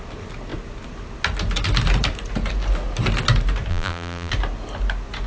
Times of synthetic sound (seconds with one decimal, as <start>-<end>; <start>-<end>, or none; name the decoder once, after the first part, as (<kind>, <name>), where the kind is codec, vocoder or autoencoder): 3.7-4.3 (vocoder, BigVGAN v2)